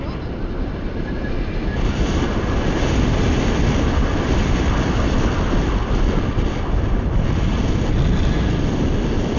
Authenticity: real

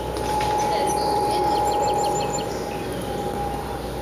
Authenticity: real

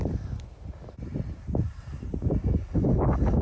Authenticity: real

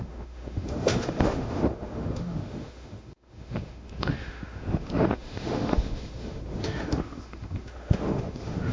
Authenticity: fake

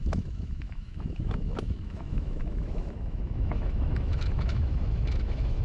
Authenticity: fake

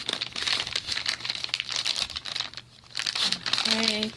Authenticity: real